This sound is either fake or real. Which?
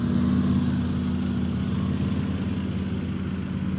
real